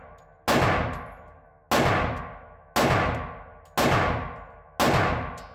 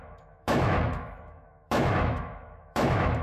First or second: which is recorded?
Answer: first